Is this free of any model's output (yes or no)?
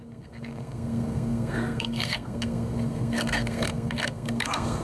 no